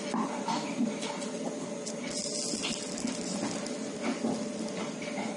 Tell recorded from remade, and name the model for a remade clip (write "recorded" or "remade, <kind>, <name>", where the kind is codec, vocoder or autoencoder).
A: recorded